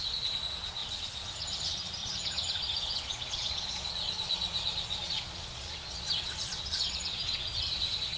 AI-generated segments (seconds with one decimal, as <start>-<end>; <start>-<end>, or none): 0.0-8.2